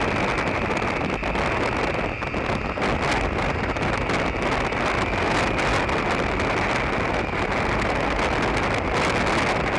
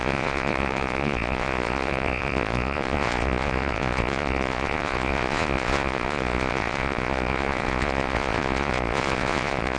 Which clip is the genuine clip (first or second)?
first